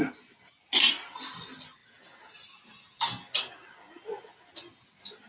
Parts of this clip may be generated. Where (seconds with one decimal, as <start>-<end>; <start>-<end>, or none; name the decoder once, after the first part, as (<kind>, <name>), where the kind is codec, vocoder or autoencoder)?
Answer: none